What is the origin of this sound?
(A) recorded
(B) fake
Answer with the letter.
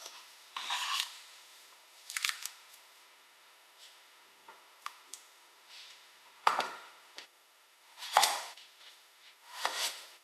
B